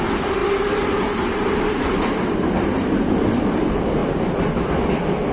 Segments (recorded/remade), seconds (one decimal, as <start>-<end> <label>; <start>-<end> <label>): 0.0-0.4 recorded; 0.4-2.9 remade; 2.9-4.0 recorded; 4.0-4.7 remade; 4.7-5.3 recorded